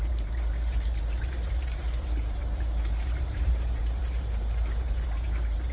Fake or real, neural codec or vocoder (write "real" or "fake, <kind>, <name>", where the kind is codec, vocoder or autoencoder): fake, vocoder, BigVGAN v2